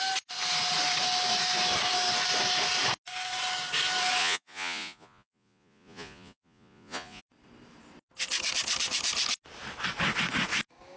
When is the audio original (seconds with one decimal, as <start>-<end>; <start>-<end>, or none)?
0.0-4.2; 7.2-11.0